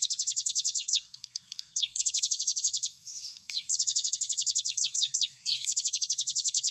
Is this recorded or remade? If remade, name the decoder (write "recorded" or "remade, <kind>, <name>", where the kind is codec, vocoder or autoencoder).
remade, codec, SNAC